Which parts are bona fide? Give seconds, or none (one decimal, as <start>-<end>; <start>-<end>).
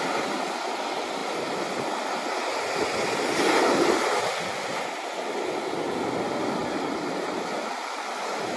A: 0.0-6.6; 8.1-8.6